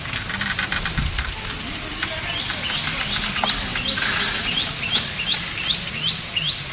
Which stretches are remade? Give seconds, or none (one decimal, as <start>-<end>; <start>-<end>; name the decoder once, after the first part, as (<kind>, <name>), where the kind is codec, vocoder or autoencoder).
none